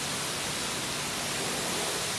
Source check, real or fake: real